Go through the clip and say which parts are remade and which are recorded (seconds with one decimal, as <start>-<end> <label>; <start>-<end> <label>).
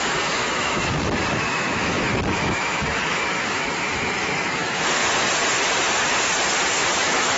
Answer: 0.0-5.0 remade; 5.0-6.8 recorded; 6.8-7.4 remade